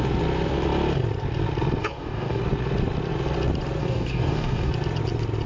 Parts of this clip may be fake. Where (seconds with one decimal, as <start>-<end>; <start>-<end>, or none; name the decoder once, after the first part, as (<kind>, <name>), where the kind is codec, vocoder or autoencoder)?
1.8-2.4 (codec, DAC); 3.8-4.7